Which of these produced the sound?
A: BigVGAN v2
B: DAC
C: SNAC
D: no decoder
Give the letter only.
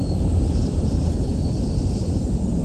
A